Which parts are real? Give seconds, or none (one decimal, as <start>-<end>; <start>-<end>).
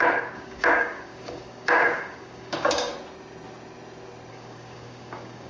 2.9-4.3